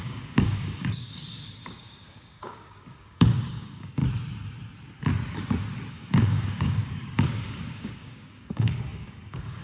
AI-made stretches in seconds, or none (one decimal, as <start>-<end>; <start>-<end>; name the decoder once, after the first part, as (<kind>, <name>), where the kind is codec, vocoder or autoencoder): 0.0-4.0 (codec, DAC); 5.9-9.6